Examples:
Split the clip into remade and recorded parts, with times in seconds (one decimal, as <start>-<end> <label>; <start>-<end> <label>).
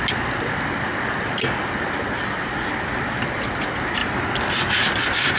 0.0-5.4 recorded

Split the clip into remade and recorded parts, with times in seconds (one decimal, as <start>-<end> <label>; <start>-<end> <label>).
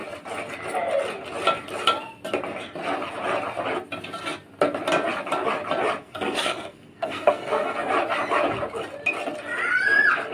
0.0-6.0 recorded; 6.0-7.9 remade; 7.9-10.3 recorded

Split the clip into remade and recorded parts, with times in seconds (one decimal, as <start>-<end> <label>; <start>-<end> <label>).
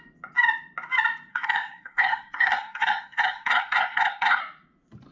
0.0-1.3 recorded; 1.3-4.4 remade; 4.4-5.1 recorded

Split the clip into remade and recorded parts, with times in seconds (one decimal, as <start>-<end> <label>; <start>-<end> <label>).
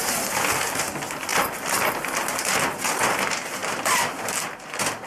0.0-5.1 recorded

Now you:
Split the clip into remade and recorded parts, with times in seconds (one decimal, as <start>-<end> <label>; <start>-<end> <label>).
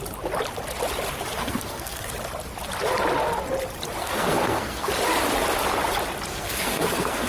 0.0-1.4 recorded; 1.4-2.1 remade; 2.1-4.0 recorded; 4.0-4.9 remade; 4.9-6.3 recorded; 6.3-7.3 remade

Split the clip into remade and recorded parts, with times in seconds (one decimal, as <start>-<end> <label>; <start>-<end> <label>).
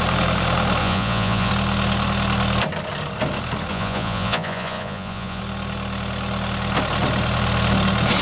0.0-0.8 recorded; 0.8-1.5 remade; 1.5-3.7 recorded; 3.7-5.4 remade; 5.4-8.2 recorded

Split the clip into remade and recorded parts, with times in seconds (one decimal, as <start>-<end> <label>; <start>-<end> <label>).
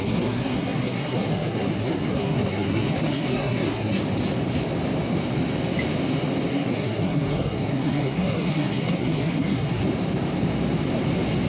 0.0-4.0 remade; 4.0-6.5 recorded; 6.5-9.8 remade; 9.8-11.5 recorded